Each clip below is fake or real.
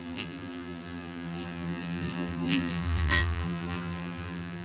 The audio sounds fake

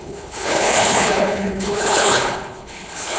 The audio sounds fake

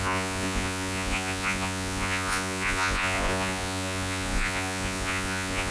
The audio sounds fake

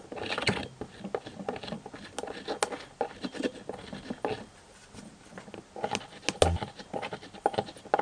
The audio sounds real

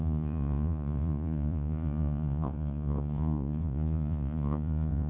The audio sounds fake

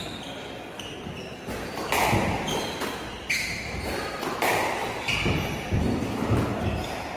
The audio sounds real